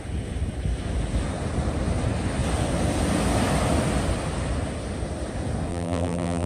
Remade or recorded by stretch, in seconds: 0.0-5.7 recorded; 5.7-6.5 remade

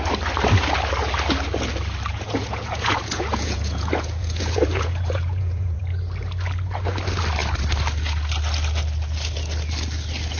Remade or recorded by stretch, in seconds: 0.0-2.1 recorded; 2.1-5.8 remade; 5.8-10.4 recorded

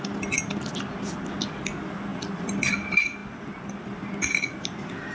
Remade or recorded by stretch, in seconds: 0.0-5.1 recorded

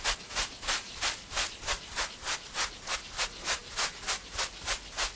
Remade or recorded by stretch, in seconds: 0.0-5.2 recorded

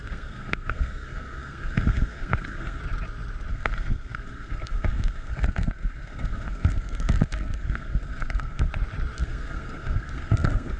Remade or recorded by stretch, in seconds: 0.0-2.8 remade; 2.8-3.5 recorded; 3.5-8.7 remade; 8.7-9.2 recorded; 9.2-10.8 remade

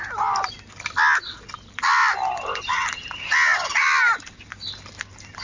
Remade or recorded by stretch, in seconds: 0.0-5.4 recorded

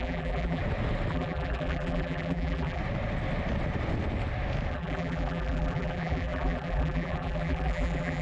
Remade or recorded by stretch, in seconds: 0.0-0.6 remade; 0.6-1.1 recorded; 1.1-2.8 remade; 2.8-4.7 recorded; 4.7-8.2 remade

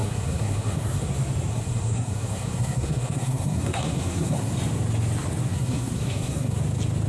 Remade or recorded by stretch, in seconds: 0.0-1.1 remade; 1.1-1.5 recorded; 1.5-4.5 remade; 4.5-5.5 recorded; 5.5-6.6 remade; 6.6-7.1 recorded